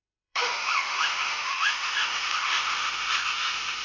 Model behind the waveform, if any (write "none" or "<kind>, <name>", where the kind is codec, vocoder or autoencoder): autoencoder, DAC-VAE